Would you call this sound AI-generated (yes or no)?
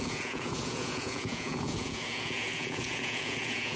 yes